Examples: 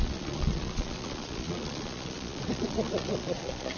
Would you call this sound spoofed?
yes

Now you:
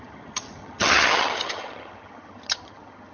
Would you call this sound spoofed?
yes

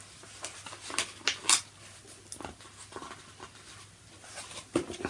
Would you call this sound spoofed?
no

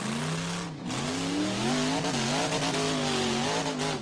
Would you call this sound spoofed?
no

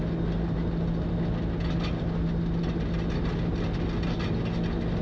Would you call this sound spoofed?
no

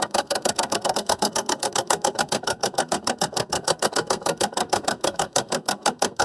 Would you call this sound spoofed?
yes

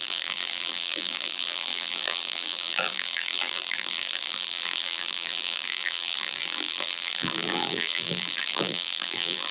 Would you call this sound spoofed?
yes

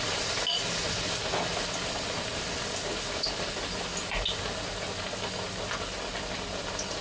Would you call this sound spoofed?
no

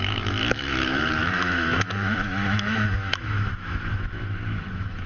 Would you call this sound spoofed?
yes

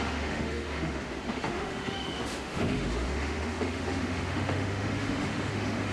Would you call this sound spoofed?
yes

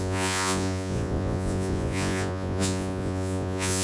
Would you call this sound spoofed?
yes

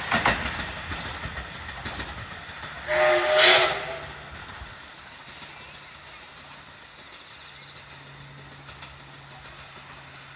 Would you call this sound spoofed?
no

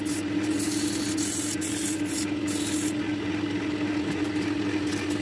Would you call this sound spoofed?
no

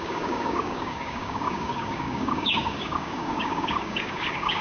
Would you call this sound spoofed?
yes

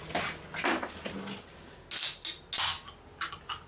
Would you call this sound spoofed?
no